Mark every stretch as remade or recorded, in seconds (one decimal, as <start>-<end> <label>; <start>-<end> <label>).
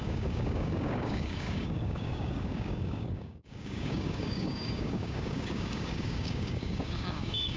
0.0-7.6 remade